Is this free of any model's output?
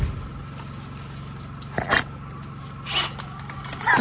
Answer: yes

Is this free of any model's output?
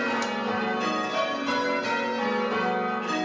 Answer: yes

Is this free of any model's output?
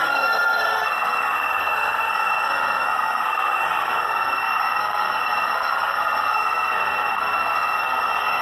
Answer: no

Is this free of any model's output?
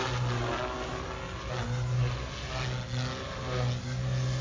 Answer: yes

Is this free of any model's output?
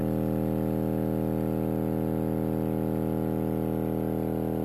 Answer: yes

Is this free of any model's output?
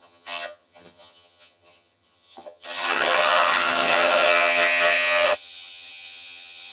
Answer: no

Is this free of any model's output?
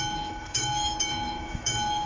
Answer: no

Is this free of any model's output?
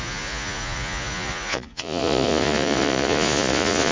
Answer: no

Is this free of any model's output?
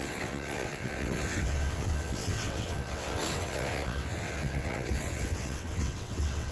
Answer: no